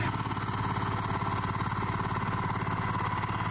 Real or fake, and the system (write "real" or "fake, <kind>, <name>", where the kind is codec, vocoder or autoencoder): real